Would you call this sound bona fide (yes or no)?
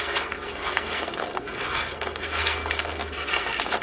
no